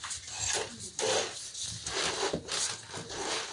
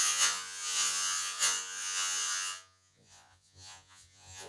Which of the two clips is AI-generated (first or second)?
second